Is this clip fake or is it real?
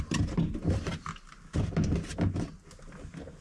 real